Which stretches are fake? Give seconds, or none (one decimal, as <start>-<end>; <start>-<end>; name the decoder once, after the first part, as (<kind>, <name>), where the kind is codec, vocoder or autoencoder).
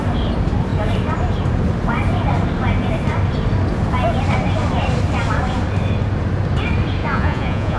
7.0-7.8 (vocoder, Vocos)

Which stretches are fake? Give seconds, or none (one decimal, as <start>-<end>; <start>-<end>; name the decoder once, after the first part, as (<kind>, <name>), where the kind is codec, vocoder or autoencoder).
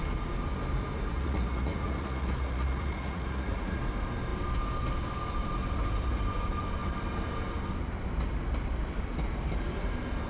1.1-3.8 (vocoder, Vocos)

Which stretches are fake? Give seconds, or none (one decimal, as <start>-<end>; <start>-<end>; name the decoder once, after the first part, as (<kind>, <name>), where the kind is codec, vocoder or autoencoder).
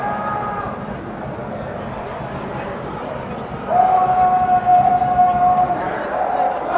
none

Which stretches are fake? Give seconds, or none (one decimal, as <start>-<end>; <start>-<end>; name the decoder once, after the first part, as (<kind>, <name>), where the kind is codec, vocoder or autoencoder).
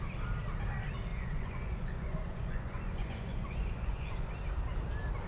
1.1-4.3 (vocoder, Vocos)